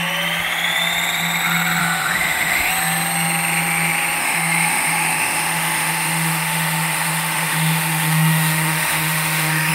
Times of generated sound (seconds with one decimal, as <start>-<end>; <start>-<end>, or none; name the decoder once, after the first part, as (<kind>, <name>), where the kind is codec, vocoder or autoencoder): 1.8-2.7 (autoencoder, DAC-VAE); 4.2-9.7